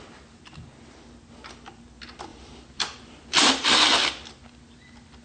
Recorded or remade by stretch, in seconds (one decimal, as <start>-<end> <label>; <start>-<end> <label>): 0.0-2.3 recorded; 2.3-4.3 remade; 4.3-5.2 recorded

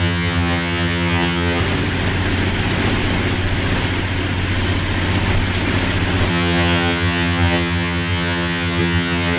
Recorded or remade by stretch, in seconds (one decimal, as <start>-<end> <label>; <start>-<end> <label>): 0.0-1.6 remade; 1.6-6.3 recorded; 6.3-9.4 remade

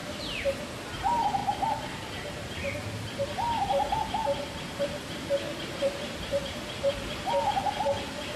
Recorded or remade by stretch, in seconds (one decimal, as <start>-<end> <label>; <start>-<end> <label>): 0.0-1.4 recorded; 1.4-2.6 remade; 2.6-4.2 recorded; 4.2-5.0 remade; 5.0-5.5 recorded; 5.5-7.3 remade; 7.3-8.4 recorded

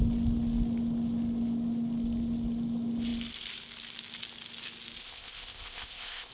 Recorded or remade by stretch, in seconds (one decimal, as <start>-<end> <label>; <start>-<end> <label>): 0.0-5.0 recorded; 5.0-6.3 remade

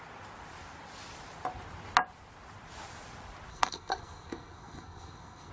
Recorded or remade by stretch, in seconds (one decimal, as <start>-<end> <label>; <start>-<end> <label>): 0.0-3.5 recorded; 3.5-5.5 remade

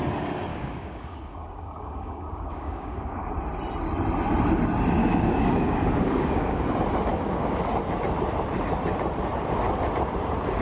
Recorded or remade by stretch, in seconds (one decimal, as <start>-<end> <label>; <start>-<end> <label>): 0.0-0.5 recorded; 0.5-3.3 remade; 3.3-5.0 recorded; 5.0-6.6 remade; 6.6-7.1 recorded; 7.1-7.6 remade; 7.6-10.6 recorded

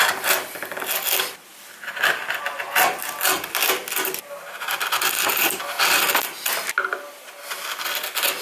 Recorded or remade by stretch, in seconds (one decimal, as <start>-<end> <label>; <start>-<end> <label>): 0.0-8.4 recorded

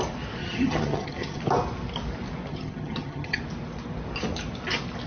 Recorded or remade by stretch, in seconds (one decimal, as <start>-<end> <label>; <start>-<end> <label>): 0.0-0.4 recorded; 0.4-1.4 remade; 1.4-2.5 recorded; 2.5-3.4 remade; 3.4-5.1 recorded